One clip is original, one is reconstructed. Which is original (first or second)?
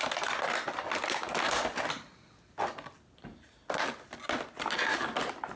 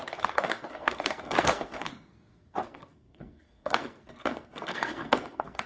first